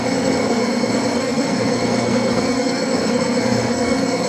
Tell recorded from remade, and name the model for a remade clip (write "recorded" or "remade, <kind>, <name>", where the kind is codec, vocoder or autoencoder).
remade, codec, SNAC